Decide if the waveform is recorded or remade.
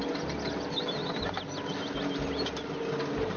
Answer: recorded